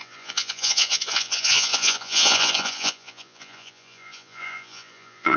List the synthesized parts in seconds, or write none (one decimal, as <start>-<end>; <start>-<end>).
0.0-5.4